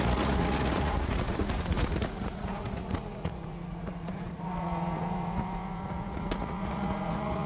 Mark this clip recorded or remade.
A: remade